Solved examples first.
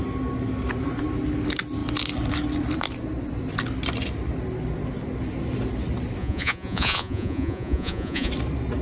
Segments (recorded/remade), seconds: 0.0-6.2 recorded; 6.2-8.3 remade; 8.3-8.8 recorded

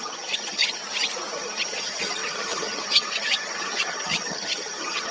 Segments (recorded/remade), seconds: 0.0-0.8 remade; 0.8-1.3 recorded; 1.3-5.1 remade

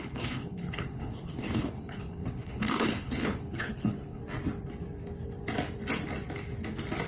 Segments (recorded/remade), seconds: 0.0-4.2 remade; 4.2-7.1 recorded